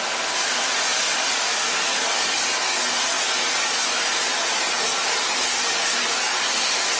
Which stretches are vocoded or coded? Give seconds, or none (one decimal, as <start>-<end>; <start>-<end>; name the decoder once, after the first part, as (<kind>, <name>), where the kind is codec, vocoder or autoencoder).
5.5-6.1 (vocoder, BigVGAN v2)